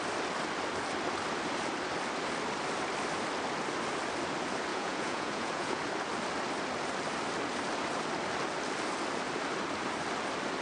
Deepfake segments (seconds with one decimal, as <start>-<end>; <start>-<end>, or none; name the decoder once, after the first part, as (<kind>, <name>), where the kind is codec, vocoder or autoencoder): 4.7-5.8 (vocoder, Vocos)